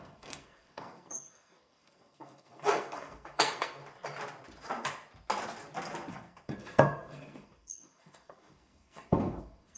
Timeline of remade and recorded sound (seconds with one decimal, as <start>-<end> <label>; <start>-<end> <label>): 0.0-3.8 remade; 3.8-6.1 recorded; 6.1-9.8 remade